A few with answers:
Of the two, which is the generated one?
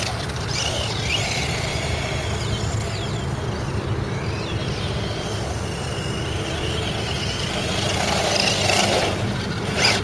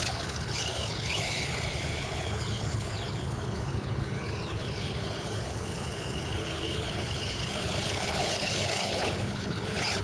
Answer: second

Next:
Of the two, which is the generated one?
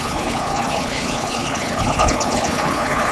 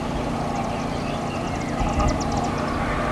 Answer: first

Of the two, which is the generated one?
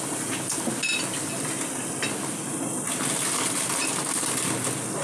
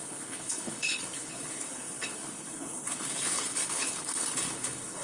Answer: second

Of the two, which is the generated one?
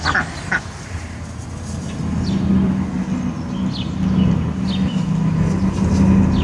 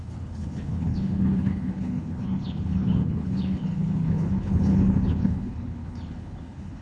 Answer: second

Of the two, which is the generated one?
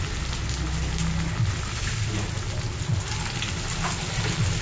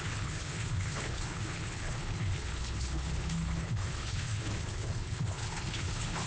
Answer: second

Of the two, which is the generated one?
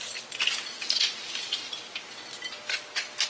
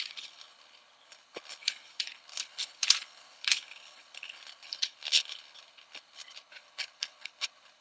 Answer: second